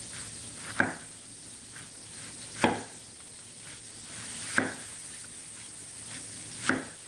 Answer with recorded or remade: recorded